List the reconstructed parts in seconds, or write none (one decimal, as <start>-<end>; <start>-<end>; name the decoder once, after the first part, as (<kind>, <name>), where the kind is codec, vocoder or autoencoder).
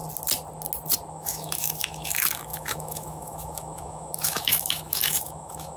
1.1-5.8 (autoencoder, DAC-VAE)